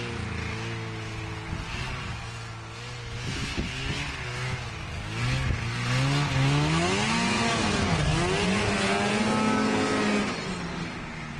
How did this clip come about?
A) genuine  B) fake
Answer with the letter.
A